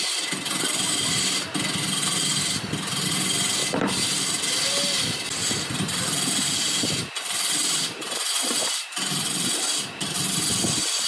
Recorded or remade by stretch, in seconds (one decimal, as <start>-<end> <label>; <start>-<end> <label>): 0.0-3.6 recorded; 3.6-4.3 remade; 4.3-5.4 recorded; 5.4-10.3 remade; 10.3-11.1 recorded